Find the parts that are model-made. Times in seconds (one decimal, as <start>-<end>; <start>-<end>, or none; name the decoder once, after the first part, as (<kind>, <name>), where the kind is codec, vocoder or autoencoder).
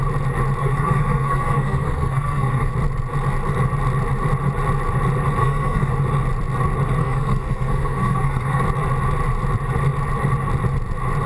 0.6-2.7 (codec, SNAC); 5.4-5.9; 7.0-8.6